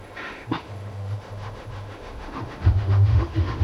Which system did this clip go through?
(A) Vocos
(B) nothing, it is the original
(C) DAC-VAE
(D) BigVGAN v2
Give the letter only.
C